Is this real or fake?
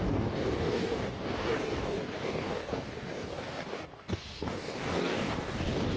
fake